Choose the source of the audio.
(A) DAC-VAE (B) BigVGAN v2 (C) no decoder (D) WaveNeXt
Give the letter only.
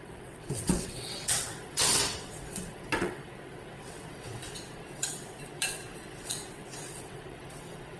D